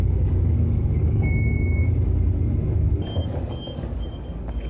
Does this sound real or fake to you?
fake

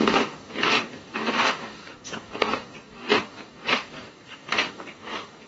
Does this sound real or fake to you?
fake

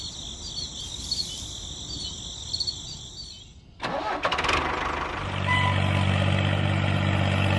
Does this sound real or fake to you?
real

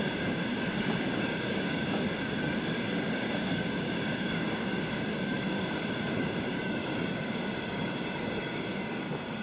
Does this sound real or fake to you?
fake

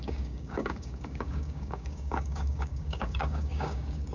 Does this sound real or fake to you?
fake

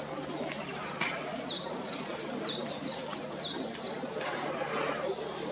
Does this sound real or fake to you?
real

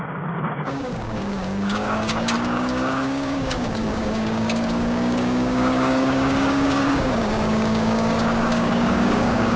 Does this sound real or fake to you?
fake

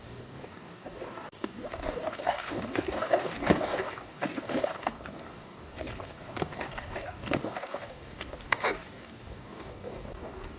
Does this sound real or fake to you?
fake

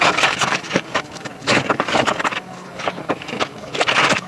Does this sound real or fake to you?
fake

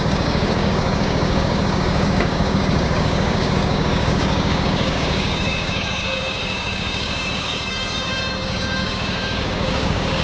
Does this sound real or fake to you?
fake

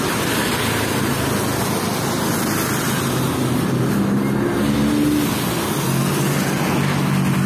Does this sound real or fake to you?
real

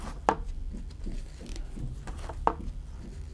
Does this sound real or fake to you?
real